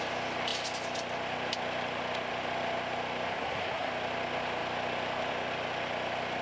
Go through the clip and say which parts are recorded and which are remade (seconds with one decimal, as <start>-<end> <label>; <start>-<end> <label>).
0.0-3.3 recorded; 3.3-3.9 remade; 3.9-6.4 recorded